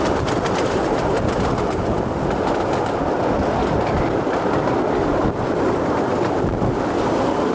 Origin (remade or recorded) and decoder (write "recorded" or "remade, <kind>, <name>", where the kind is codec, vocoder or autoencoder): recorded